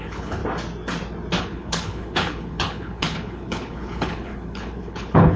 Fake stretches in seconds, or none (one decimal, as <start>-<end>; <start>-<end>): 0.0-0.4; 1.4-5.4